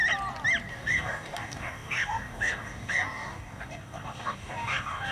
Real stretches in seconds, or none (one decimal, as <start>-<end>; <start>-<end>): 0.0-0.7